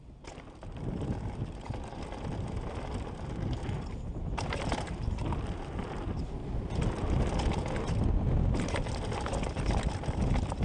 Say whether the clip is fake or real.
real